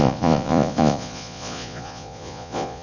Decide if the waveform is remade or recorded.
remade